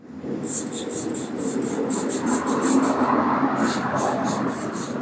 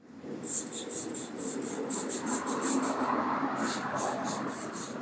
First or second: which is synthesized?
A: second